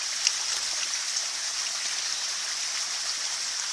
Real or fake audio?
real